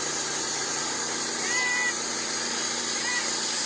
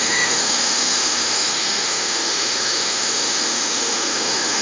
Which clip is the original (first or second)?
first